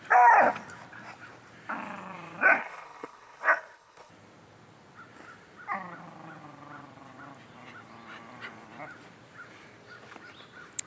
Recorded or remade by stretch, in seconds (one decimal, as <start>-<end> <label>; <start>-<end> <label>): 0.0-2.6 recorded; 2.6-4.1 remade; 4.1-10.9 recorded